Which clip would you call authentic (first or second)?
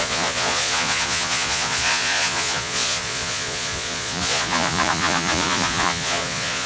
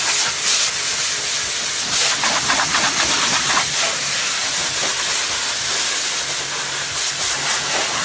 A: second